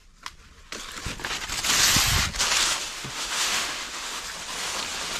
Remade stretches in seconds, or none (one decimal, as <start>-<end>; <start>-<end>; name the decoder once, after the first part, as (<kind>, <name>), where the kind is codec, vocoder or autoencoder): 2.9-4.2 (autoencoder, DAC-VAE)